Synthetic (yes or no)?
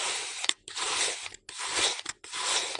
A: no